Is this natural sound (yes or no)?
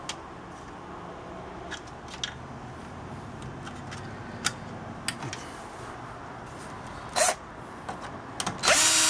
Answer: yes